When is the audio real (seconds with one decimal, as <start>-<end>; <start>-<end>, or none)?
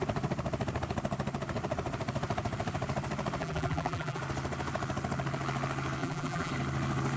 0.0-3.4; 4.2-6.0; 6.5-7.2